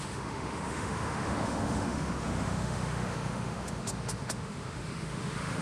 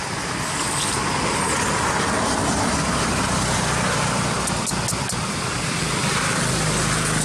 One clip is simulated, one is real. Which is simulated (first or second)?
first